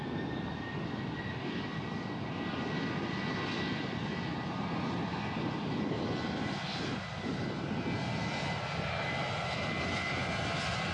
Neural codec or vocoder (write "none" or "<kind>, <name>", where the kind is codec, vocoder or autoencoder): none